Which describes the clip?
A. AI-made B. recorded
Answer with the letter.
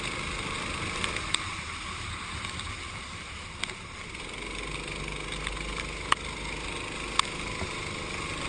B